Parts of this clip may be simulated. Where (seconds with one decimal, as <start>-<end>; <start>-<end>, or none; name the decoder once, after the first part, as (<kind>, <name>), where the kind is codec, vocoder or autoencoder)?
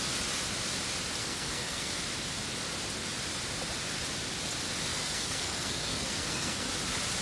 1.2-2.0 (codec, SNAC); 4.9-6.7